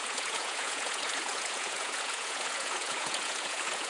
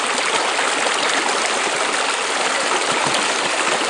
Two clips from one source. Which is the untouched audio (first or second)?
second